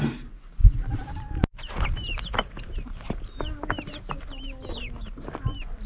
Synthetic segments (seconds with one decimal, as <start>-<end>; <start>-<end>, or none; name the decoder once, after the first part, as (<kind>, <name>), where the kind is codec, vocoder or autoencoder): none

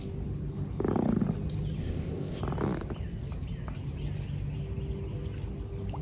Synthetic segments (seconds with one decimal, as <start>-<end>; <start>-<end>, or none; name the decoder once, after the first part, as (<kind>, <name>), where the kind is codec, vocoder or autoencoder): 1.8-2.4 (codec, ZipCodec)

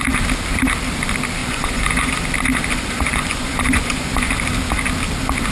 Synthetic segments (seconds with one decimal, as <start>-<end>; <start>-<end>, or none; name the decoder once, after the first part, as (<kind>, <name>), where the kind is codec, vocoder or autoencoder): 1.4-2.1 (vocoder, Vocos); 2.7-4.3

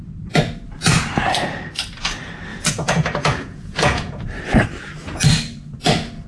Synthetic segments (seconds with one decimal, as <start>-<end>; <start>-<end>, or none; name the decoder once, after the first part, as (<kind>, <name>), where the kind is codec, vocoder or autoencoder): 2.5-4.2 (vocoder, Vocos)

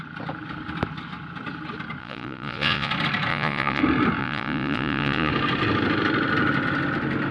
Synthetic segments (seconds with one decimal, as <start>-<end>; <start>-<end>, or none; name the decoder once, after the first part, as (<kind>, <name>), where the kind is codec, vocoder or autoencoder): 2.0-2.9 (vocoder, Vocos); 3.3-3.8; 4.2-5.3

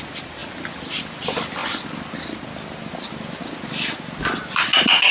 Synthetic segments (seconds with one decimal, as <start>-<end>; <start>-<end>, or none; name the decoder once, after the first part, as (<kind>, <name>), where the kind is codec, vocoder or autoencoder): none